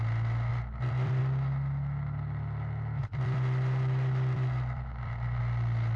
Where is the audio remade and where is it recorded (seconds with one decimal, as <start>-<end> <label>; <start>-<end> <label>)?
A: 0.0-0.5 recorded; 0.5-1.2 remade; 1.2-3.0 recorded; 3.0-5.4 remade; 5.4-6.0 recorded